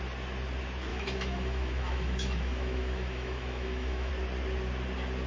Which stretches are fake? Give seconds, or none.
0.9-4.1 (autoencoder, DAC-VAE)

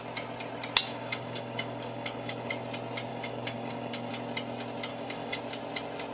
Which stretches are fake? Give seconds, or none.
0.9-2.5 (codec, DAC); 3.1-4.1; 4.9-5.4

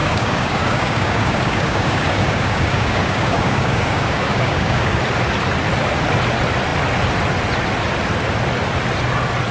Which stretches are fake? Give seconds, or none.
0.0-5.0 (codec, DAC)